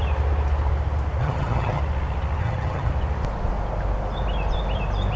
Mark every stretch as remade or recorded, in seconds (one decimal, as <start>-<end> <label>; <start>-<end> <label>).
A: 0.0-1.2 recorded; 1.2-1.8 remade; 1.8-2.4 recorded; 2.4-2.9 remade; 2.9-5.2 recorded